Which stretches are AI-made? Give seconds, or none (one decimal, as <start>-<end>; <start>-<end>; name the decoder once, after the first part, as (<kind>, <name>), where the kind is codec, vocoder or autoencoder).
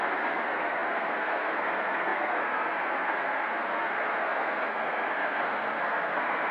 0.0-6.5 (codec, SNAC)